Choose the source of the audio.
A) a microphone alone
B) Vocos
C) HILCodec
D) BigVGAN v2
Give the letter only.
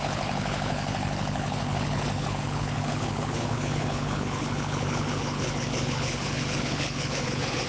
C